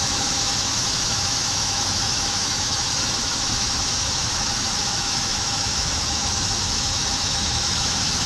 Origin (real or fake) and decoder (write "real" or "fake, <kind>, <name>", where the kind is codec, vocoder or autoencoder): fake, autoencoder, DAC-VAE